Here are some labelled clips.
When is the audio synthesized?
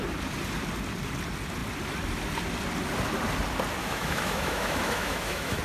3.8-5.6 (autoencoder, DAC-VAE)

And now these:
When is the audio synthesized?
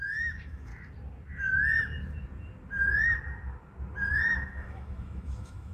0.0-0.7 (autoencoder, DAC-VAE); 4.1-5.7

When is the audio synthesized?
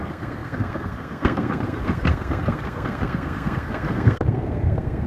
0.0-5.1 (codec, SNAC)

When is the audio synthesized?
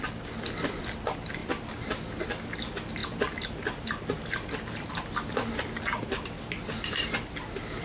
none